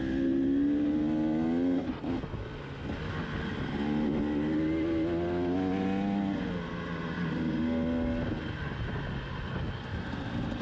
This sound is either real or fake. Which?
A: real